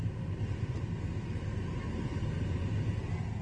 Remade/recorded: recorded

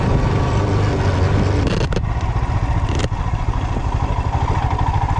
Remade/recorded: recorded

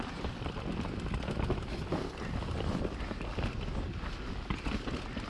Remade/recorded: recorded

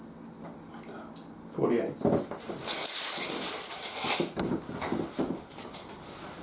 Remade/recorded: recorded